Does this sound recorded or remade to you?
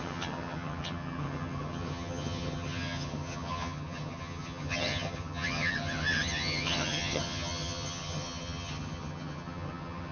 remade